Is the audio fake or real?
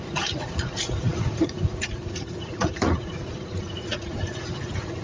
fake